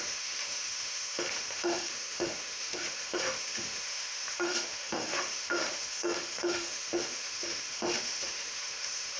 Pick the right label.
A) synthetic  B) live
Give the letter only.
A